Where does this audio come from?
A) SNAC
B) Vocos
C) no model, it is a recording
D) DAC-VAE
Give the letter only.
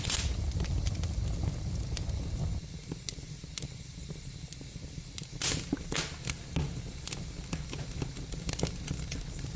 C